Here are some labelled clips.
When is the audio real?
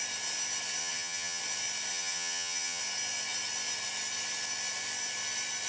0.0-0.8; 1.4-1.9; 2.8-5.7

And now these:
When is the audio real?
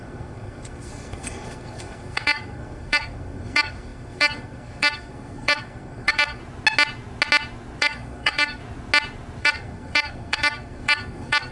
6.4-7.8; 8.6-9.4